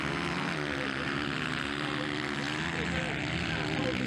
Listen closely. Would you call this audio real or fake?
real